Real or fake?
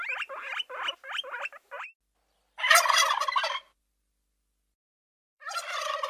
real